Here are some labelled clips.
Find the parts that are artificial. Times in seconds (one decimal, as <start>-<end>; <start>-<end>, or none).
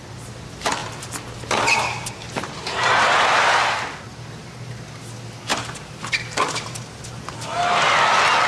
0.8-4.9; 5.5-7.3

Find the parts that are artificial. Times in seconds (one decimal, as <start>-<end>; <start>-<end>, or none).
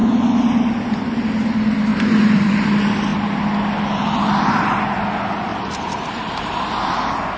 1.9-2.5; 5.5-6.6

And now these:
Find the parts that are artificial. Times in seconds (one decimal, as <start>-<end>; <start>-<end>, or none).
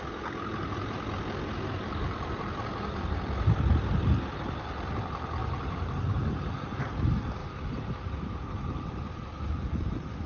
5.4-6.9; 7.4-9.9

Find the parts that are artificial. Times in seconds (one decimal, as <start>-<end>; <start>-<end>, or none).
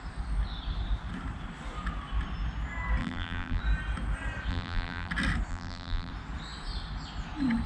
3.0-3.6; 4.5-5.1; 5.5-6.1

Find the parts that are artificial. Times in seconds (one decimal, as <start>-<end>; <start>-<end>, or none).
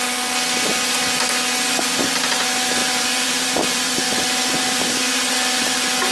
2.8-4.0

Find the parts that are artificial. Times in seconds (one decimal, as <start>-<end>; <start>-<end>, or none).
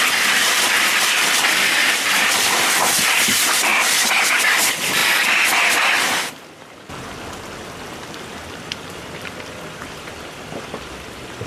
0.0-5.0; 8.9-11.5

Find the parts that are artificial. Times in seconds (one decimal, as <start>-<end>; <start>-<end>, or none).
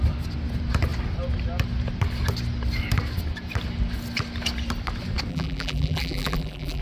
5.3-6.8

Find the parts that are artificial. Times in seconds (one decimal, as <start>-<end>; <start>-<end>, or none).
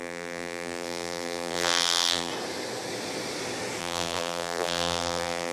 0.0-2.3; 3.8-5.5